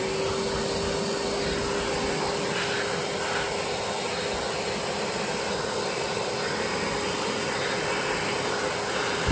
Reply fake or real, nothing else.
real